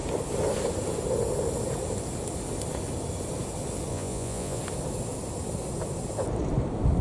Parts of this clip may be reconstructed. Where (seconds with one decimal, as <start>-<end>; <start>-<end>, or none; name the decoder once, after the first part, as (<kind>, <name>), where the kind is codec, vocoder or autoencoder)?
3.9-4.6 (vocoder, Vocos)